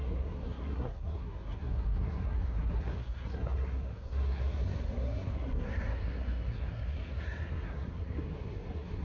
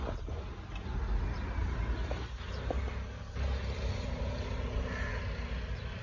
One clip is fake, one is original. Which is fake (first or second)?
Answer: first